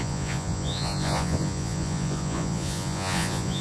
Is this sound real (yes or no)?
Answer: no